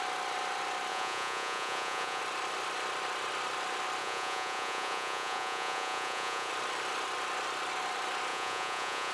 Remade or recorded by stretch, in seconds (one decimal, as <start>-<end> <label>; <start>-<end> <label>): 0.0-0.9 recorded; 0.9-2.2 remade; 2.2-4.0 recorded; 4.0-6.5 remade; 6.5-8.3 recorded; 8.3-9.1 remade